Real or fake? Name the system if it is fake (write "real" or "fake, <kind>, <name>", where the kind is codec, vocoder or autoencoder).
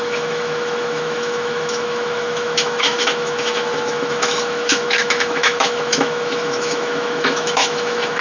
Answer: fake, autoencoder, DAC-VAE